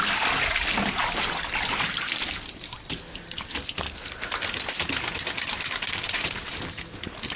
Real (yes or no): yes